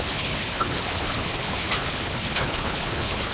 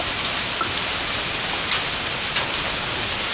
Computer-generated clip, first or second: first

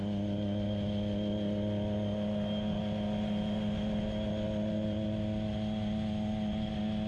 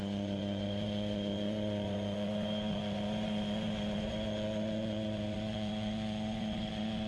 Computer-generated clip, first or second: second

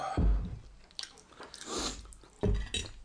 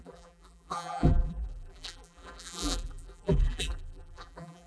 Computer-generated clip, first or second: second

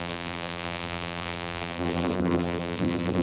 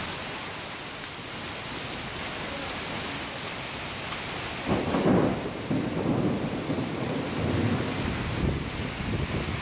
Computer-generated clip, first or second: first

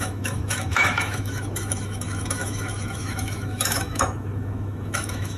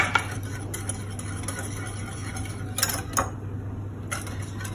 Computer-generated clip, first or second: first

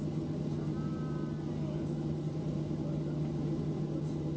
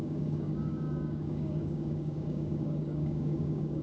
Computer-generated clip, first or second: second